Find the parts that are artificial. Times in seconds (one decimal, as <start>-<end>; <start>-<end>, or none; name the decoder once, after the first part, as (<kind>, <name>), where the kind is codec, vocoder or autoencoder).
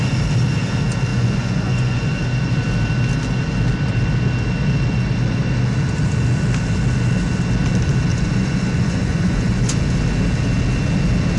1.1-2.2 (vocoder, Vocos); 8.1-9.8